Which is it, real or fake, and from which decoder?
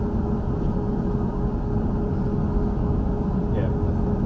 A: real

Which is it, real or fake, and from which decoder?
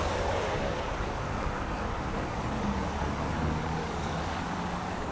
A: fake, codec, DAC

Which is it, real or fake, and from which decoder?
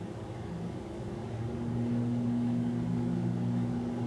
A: fake, codec, DAC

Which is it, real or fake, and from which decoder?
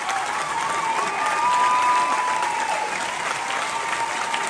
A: real